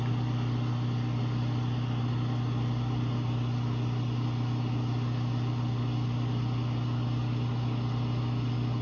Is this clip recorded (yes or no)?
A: yes